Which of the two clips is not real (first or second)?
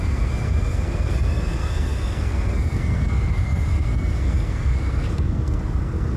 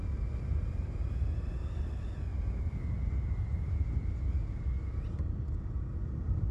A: first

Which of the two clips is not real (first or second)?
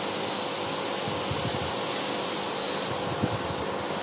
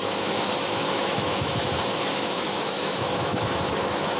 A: second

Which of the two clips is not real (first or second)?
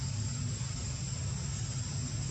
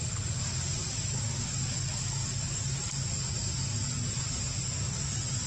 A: first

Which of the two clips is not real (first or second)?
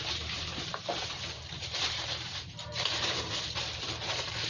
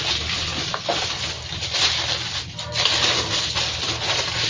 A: first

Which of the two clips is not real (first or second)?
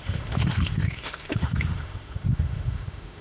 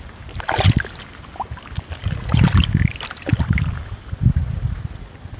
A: first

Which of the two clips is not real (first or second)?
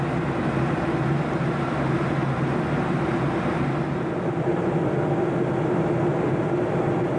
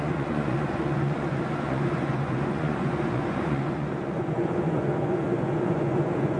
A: second